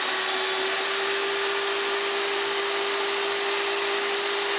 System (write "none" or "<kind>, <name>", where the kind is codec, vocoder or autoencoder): none